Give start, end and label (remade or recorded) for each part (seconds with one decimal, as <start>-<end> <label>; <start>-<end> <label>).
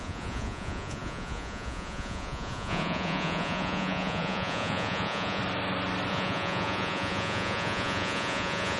0.0-5.4 remade; 5.4-6.1 recorded; 6.1-8.8 remade